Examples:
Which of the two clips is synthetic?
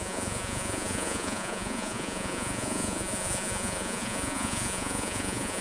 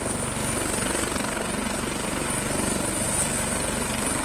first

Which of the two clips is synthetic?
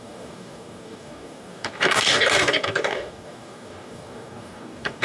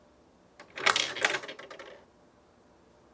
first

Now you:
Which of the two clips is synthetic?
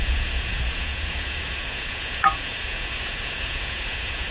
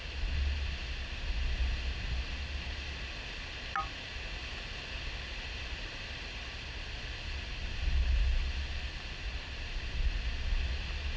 first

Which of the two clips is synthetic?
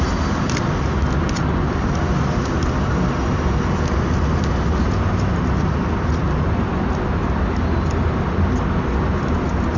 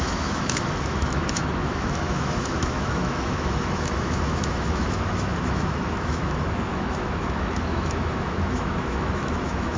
second